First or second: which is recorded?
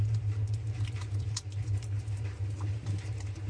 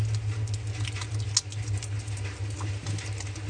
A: second